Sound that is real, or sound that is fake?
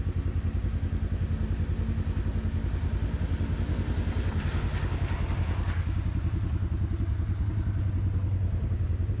real